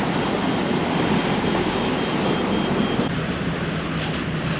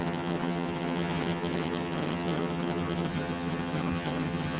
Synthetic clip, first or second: second